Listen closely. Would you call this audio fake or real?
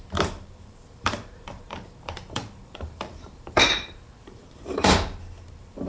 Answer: fake